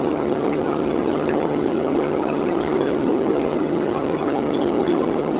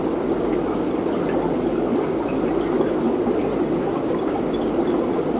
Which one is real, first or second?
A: second